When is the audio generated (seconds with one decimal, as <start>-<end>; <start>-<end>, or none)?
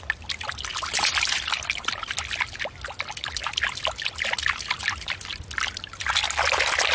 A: none